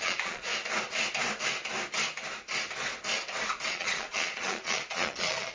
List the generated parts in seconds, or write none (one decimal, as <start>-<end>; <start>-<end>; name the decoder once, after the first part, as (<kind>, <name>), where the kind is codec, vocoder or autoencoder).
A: 0.0-0.5 (vocoder, Vocos); 3.7-5.5